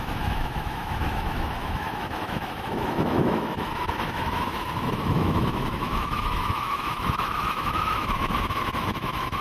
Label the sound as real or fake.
fake